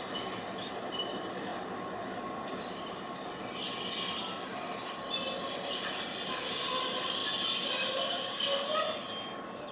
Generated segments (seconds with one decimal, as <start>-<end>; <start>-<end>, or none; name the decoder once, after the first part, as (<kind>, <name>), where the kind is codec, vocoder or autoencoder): none